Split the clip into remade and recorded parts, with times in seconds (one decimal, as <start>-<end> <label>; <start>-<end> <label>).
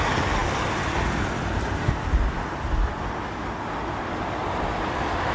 0.0-5.3 recorded